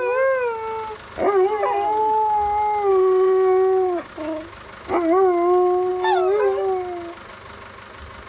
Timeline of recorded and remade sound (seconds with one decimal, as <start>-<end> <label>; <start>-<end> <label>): 0.0-2.9 recorded; 2.9-4.1 remade; 4.1-8.3 recorded